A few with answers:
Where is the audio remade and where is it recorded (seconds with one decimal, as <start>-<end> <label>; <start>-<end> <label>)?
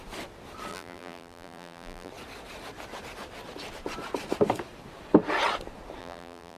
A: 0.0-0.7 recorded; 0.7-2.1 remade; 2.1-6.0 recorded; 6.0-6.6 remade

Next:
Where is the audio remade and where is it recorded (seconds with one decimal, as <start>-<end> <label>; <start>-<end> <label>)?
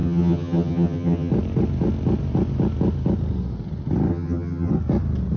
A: 0.0-1.3 remade; 1.3-4.1 recorded; 4.1-4.7 remade; 4.7-5.4 recorded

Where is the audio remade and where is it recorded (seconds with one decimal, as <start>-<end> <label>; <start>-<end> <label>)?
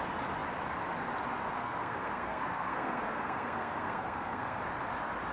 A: 0.0-1.6 recorded; 1.6-4.6 remade; 4.6-5.3 recorded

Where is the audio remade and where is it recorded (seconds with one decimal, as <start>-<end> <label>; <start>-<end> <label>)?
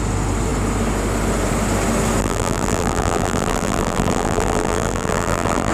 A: 0.0-2.2 recorded; 2.2-5.7 remade